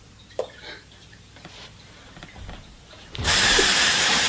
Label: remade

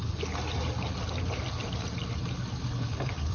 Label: recorded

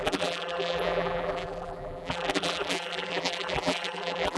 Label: remade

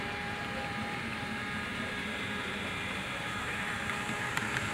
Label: remade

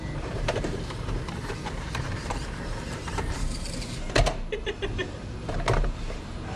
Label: remade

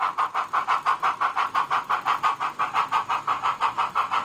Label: recorded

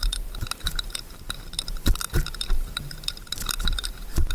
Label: remade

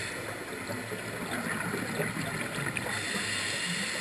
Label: recorded